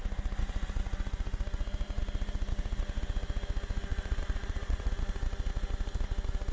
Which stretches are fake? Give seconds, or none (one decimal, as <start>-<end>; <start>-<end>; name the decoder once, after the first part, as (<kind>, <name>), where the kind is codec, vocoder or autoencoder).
3.9-4.9 (vocoder, Vocos)

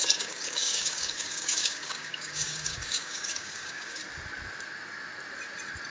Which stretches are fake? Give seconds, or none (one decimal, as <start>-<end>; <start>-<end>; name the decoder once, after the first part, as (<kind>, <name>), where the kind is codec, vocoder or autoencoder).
0.0-4.0 (codec, DAC)

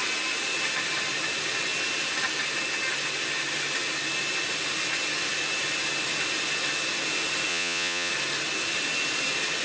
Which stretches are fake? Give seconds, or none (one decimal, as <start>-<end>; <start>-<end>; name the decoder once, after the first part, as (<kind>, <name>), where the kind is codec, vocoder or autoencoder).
7.5-8.1 (vocoder, Vocos)